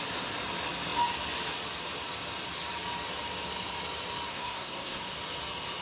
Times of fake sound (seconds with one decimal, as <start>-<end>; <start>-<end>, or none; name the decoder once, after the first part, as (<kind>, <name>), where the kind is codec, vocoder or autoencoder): 4.3-5.0 (codec, SNAC)